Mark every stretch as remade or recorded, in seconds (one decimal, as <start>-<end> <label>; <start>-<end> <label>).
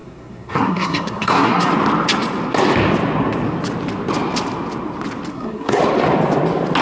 0.0-1.7 remade; 1.7-5.3 recorded; 5.3-5.8 remade; 5.8-6.8 recorded